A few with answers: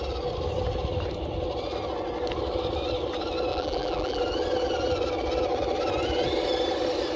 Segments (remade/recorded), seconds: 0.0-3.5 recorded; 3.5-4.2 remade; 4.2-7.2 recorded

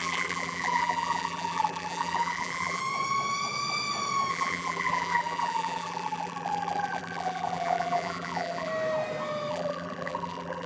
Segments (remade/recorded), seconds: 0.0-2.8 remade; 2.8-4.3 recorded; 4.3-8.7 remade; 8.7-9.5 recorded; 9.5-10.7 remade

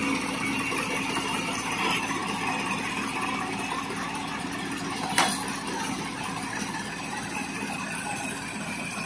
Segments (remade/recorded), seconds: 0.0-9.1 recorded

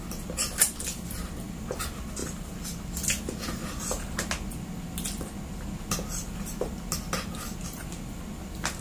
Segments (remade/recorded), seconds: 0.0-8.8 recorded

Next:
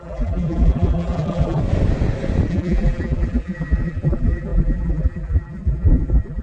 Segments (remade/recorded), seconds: 0.0-1.6 remade; 1.6-2.5 recorded; 2.5-6.4 remade

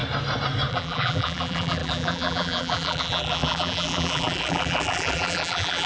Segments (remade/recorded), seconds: 0.0-0.7 recorded; 0.7-5.9 remade

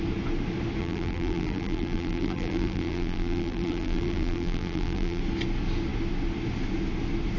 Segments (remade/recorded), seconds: 0.0-0.8 recorded; 0.8-5.2 remade; 5.2-7.4 recorded